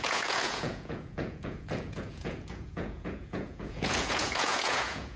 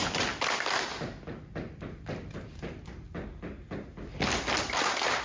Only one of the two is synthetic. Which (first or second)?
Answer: first